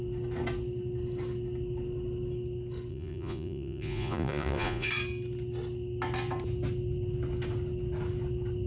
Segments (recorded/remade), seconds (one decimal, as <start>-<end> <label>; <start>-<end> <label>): 0.0-2.9 recorded; 2.9-4.9 remade; 4.9-8.7 recorded